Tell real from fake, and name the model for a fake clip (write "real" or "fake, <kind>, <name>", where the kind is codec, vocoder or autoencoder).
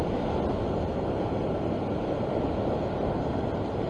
real